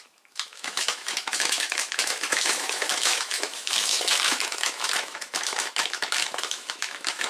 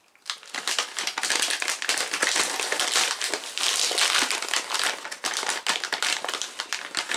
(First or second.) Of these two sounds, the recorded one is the second